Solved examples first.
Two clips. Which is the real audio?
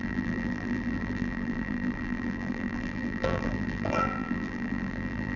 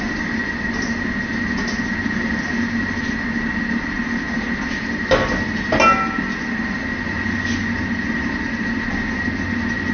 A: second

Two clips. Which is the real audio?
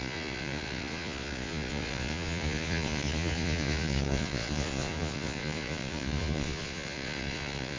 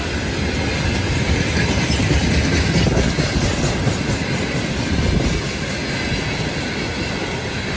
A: second